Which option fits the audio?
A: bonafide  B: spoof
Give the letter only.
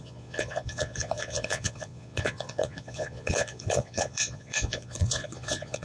B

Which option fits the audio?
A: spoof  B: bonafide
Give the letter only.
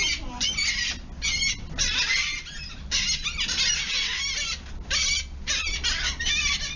B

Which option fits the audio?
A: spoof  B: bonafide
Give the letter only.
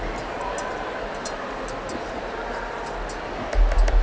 B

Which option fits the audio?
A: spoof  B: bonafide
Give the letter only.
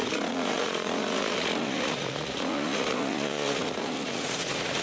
A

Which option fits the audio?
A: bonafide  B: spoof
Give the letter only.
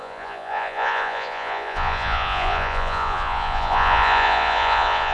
B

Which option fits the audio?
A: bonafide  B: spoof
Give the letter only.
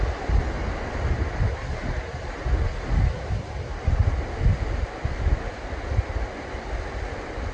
A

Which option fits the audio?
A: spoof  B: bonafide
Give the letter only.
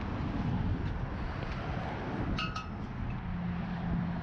B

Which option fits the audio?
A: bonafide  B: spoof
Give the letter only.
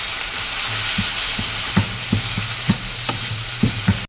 A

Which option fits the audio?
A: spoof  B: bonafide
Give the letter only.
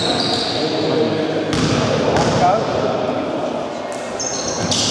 B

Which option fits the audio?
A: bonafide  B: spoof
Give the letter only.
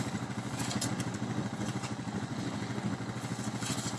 B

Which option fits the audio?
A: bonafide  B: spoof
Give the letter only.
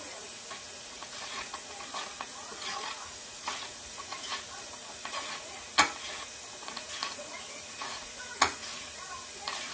B